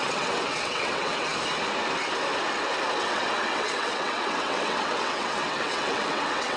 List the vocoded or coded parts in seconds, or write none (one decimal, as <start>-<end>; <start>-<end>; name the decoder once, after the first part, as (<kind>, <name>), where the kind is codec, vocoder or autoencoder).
0.0-1.3 (vocoder, WaveNeXt); 3.0-6.6